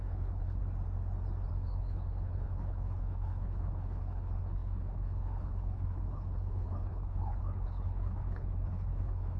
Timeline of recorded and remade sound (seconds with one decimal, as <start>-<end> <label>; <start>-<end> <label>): 0.0-0.6 remade; 0.6-1.5 recorded; 1.5-9.4 remade